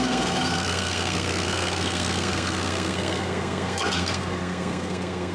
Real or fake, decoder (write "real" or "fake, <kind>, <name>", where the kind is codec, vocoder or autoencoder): fake, codec, SNAC